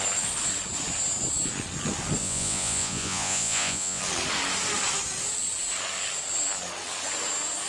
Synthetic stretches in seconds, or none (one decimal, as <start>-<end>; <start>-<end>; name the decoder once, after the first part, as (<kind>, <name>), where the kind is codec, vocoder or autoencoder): 2.2-4.0 (vocoder, Vocos)